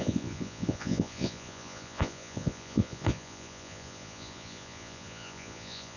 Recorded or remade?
remade